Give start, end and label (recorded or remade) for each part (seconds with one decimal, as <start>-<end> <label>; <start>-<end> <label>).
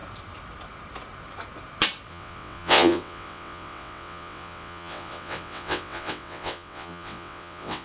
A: 0.0-2.1 recorded; 2.1-7.8 remade